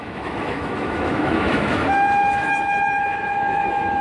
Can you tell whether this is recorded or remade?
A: remade